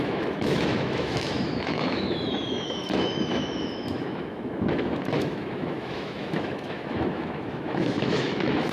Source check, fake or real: fake